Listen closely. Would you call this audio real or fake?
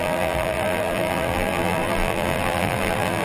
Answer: fake